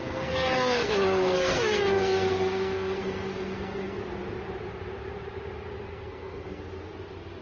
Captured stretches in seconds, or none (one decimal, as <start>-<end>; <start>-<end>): 4.0-5.9; 6.6-7.4